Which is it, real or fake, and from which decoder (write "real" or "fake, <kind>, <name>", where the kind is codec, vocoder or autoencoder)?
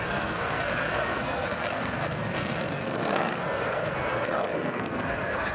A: fake, codec, SNAC